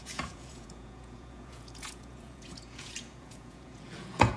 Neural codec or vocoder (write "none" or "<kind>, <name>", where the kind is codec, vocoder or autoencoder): vocoder, Vocos